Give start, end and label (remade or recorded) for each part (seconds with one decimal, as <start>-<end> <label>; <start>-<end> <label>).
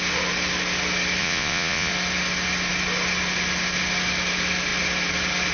0.0-1.2 recorded; 1.2-1.9 remade; 1.9-5.5 recorded